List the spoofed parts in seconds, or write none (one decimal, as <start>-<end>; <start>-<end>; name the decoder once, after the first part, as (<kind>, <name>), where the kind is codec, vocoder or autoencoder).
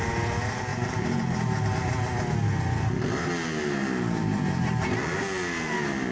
none